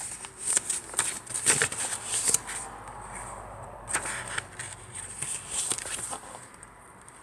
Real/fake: real